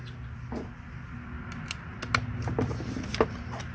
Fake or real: real